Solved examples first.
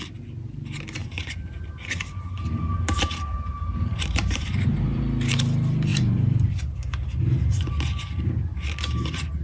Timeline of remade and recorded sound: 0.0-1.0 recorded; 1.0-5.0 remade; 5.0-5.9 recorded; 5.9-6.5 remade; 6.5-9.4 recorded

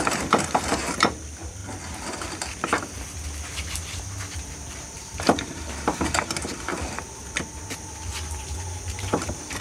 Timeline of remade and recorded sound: 0.0-1.6 remade; 1.6-4.7 recorded; 4.7-6.7 remade; 6.7-9.2 recorded; 9.2-9.6 remade

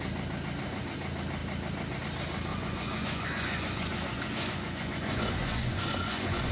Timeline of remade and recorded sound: 0.0-2.5 recorded; 2.5-6.5 remade

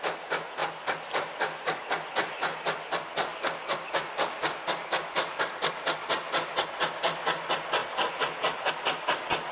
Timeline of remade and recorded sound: 0.0-0.6 recorded; 0.6-1.8 remade; 1.8-3.3 recorded; 3.3-5.4 remade; 5.4-9.5 recorded

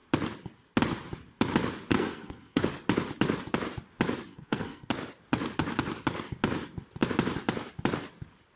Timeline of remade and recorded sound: 0.0-1.9 recorded; 1.9-2.6 remade; 2.6-4.3 recorded; 4.3-4.9 remade; 4.9-8.6 recorded

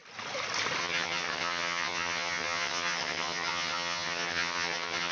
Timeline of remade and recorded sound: 0.0-0.8 recorded; 0.8-5.1 remade